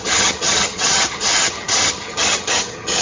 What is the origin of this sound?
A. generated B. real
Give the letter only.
A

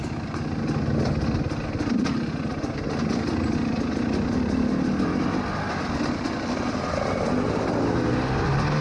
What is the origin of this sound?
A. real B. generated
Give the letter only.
A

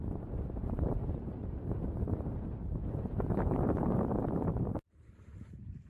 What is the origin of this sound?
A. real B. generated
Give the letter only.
B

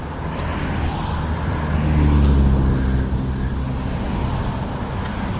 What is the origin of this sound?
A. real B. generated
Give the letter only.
A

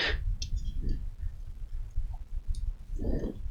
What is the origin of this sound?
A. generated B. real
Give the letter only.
B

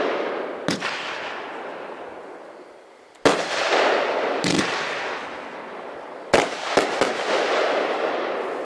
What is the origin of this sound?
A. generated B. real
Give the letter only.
B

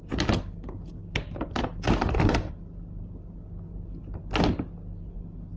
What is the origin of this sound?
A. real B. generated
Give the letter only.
A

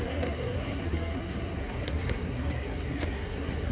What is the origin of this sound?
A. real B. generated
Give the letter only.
B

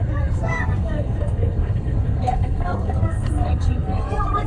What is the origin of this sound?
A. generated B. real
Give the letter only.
A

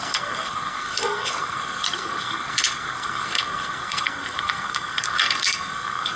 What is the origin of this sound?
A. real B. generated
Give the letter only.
B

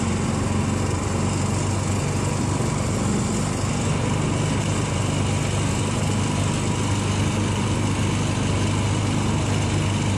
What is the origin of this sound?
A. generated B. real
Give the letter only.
B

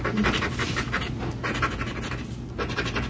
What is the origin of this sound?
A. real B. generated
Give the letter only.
A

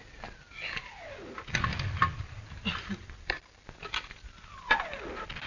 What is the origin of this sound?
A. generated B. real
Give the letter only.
B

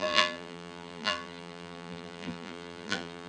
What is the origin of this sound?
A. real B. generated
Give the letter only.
B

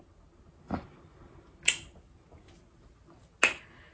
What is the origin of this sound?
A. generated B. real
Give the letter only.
B